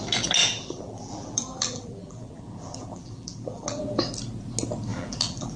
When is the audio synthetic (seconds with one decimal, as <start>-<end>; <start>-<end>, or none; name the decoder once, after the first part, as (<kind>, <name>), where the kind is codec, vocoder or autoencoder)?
0.4-3.8 (vocoder, BigVGAN v2); 4.9-5.6

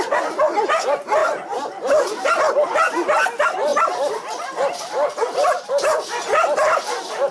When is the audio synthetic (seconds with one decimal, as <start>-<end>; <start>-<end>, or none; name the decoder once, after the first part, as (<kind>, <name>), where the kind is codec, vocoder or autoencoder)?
none

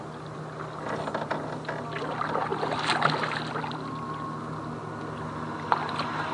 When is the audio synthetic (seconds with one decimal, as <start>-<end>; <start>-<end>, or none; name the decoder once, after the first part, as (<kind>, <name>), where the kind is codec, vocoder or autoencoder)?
none

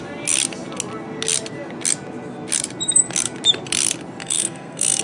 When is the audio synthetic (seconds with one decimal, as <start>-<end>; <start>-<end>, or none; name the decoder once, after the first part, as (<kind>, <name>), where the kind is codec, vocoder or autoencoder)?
4.2-5.0 (codec, SNAC)

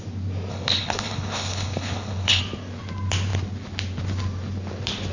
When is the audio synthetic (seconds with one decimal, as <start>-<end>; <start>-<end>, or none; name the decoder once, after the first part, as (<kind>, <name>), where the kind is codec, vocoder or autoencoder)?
0.5-2.4 (codec, HILCodec)

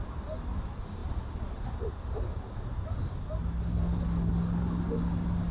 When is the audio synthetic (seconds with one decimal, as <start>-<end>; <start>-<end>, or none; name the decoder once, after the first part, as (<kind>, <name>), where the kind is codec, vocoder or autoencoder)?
none

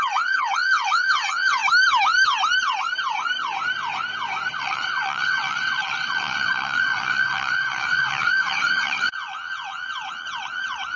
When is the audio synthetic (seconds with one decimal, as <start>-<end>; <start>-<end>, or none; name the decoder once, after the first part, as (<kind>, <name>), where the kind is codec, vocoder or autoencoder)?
0.0-1.6 (vocoder, WaveNeXt); 4.6-11.0

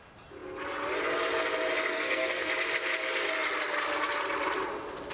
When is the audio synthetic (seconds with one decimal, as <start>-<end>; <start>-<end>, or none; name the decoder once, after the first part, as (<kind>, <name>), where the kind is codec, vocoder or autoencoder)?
1.8-2.5 (codec, SNAC)